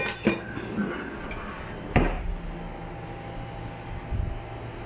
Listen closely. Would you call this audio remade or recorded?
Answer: recorded